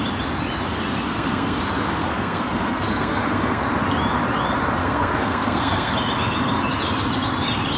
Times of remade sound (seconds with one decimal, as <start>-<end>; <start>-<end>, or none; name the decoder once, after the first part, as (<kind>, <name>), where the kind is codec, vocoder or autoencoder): 1.1-1.6 (codec, SNAC); 2.0-3.6; 4.8-5.9